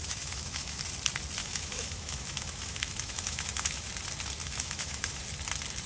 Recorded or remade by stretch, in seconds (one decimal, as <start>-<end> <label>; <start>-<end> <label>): 0.0-0.8 remade; 0.8-1.4 recorded; 1.4-3.9 remade; 3.9-4.4 recorded; 4.4-5.2 remade; 5.2-5.9 recorded